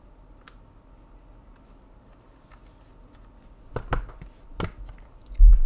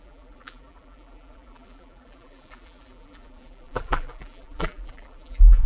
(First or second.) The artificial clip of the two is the second